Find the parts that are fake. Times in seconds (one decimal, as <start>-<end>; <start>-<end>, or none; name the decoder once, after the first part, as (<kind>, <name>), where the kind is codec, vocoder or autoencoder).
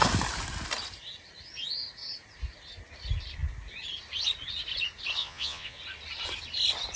5.2-5.8 (vocoder, Vocos)